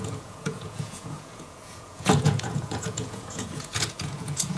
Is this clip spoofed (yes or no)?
yes